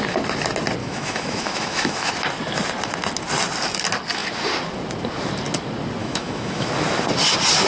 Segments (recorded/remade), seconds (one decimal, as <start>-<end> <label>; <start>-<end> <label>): 0.0-0.8 recorded; 0.8-2.1 remade; 2.1-6.0 recorded; 6.0-6.7 remade; 6.7-7.7 recorded